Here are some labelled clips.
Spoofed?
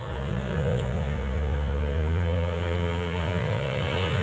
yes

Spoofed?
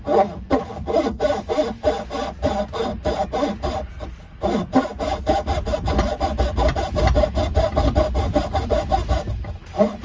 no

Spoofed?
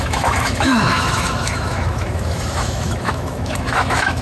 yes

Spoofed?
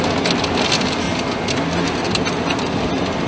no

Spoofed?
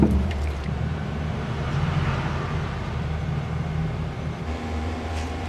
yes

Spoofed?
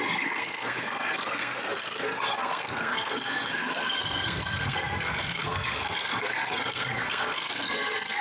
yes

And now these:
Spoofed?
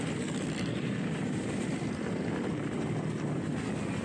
no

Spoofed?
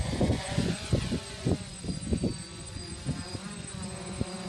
yes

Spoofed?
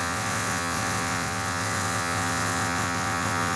yes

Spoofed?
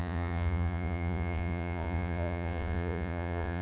yes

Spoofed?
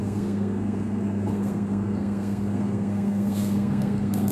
yes